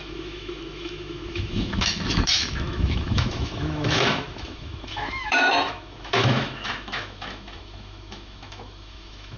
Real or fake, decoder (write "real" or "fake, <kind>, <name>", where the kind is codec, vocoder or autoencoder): fake, autoencoder, DAC-VAE